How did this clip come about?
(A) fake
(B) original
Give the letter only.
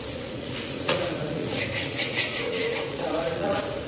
A